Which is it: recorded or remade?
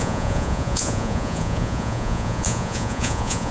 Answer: remade